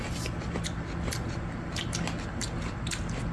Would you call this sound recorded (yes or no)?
yes